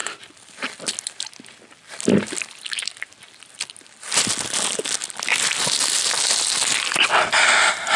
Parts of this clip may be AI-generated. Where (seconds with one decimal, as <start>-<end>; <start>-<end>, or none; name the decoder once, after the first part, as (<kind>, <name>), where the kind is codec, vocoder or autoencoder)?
0.0-4.8 (vocoder, BigVGAN v2)

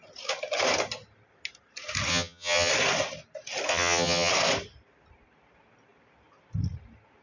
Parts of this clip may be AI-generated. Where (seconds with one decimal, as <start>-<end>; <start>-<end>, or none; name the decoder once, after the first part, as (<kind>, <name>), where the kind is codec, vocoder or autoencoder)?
2.1-2.7 (vocoder, HiFi-GAN); 3.7-4.3

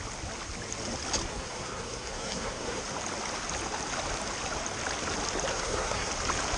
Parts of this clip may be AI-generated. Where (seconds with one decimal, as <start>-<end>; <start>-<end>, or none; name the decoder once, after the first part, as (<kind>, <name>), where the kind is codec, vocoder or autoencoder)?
1.3-2.8 (codec, SNAC); 5.5-6.1

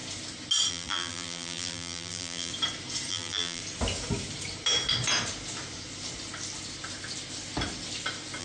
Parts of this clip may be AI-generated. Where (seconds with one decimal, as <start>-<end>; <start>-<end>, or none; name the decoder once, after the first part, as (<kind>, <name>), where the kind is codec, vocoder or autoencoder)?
0.7-2.5 (vocoder, BigVGAN v2); 3.1-3.6

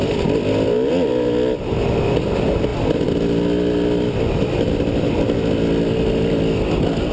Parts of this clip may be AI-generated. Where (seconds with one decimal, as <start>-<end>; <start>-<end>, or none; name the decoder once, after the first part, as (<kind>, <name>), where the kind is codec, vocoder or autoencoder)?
none

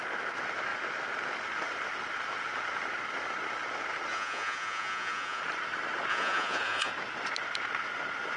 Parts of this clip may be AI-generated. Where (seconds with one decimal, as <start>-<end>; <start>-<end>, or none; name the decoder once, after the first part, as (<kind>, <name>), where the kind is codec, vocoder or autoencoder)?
4.1-5.4 (vocoder, Vocos); 6.1-6.9